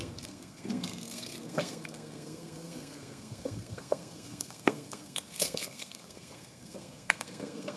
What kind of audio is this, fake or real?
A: fake